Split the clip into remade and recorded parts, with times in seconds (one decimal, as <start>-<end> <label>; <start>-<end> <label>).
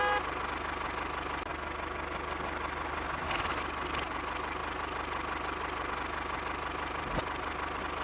0.0-8.0 recorded